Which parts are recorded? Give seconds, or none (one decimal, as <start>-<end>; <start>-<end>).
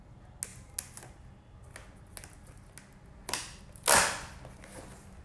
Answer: 0.0-5.2